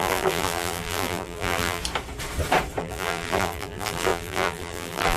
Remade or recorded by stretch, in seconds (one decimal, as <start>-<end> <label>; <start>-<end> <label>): 0.0-1.8 remade; 1.8-2.8 recorded; 2.8-5.2 remade